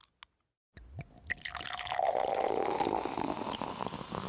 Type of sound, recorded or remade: recorded